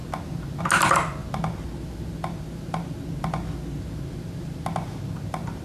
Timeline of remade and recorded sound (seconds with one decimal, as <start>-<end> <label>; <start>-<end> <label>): 0.0-5.6 recorded